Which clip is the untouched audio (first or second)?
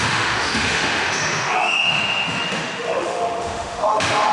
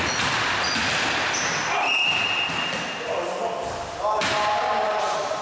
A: second